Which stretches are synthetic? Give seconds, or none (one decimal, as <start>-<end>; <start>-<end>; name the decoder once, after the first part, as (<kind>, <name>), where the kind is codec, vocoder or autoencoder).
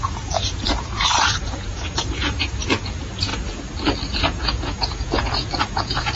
0.0-3.3 (vocoder, Vocos); 4.1-6.2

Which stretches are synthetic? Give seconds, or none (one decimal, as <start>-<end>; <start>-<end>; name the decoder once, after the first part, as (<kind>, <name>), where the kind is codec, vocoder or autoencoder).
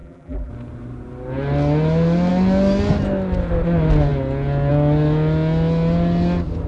0.0-0.5 (vocoder, BigVGAN v2)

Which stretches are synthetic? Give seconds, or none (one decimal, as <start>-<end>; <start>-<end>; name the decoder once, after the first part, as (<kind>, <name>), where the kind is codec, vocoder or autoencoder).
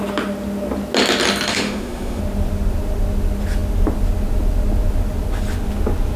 1.5-2.2 (autoencoder, DAC-VAE)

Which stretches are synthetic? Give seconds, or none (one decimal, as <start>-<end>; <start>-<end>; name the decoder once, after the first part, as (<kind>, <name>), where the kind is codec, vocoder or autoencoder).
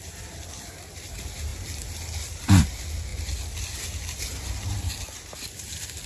none